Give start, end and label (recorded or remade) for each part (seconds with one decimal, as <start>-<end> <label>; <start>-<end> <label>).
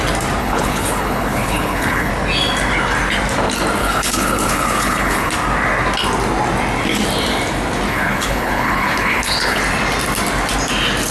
0.0-0.4 recorded; 0.4-2.1 remade; 2.1-3.8 recorded; 3.8-5.3 remade; 5.3-7.9 recorded; 7.9-9.6 remade; 9.6-11.1 recorded